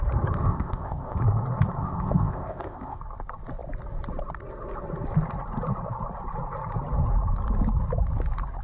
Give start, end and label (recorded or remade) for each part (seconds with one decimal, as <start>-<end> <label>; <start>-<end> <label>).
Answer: 0.0-0.4 recorded; 0.4-1.2 remade; 1.2-1.8 recorded; 1.8-3.0 remade; 3.0-8.6 recorded